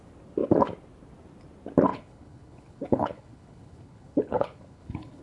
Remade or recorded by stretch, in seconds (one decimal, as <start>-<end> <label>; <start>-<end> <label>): 0.0-1.9 recorded; 1.9-5.2 remade